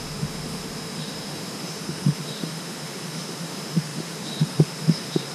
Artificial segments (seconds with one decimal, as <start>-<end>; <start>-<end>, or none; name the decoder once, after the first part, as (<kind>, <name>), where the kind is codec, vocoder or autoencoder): 0.0-5.3 (autoencoder, DAC-VAE)